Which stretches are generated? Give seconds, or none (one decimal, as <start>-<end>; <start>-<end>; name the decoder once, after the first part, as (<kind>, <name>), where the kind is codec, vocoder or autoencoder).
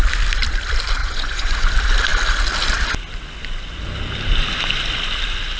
1.0-1.7 (vocoder, Vocos)